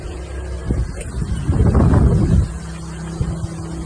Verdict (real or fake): real